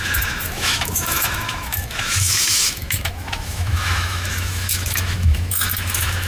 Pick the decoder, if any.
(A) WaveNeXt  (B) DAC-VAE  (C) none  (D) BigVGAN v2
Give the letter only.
B